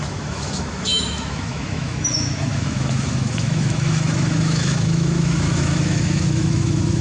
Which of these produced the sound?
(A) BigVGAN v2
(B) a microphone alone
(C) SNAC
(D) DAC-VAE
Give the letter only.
D